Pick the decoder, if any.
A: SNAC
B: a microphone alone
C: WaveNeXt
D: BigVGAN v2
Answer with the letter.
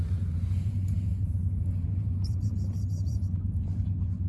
D